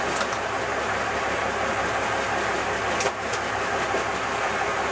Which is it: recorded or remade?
recorded